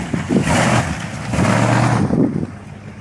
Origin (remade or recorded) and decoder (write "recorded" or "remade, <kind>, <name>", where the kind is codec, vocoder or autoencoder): recorded